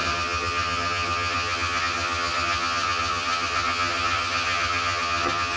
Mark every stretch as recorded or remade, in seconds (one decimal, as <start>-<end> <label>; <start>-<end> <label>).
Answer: 0.0-5.6 remade